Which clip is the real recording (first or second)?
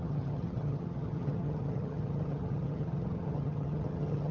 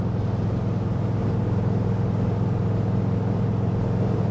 second